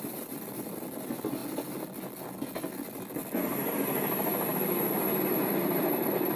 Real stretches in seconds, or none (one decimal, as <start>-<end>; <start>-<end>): 1.4-5.2